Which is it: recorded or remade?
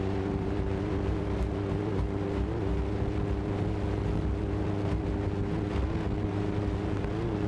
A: recorded